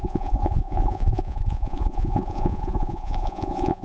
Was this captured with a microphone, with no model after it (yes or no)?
no